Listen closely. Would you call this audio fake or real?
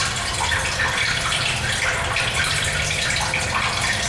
real